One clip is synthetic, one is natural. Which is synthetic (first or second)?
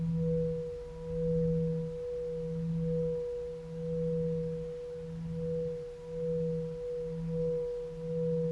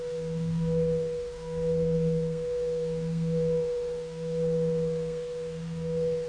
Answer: second